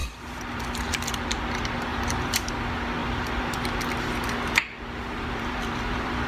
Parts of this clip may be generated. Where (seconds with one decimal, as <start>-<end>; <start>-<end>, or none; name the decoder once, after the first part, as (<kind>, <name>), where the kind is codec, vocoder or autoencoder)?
0.0-1.1 (vocoder, BigVGAN v2); 1.9-2.5; 3.0-6.3